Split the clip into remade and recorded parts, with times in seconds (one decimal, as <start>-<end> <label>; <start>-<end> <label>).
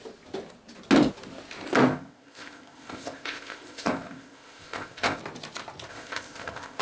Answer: 0.0-1.9 recorded; 1.9-5.2 remade; 5.2-5.9 recorded; 5.9-6.8 remade